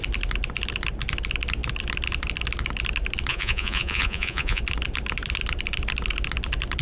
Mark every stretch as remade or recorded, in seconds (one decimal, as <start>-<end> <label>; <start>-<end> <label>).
0.0-3.3 recorded; 3.3-4.6 remade; 4.6-6.8 recorded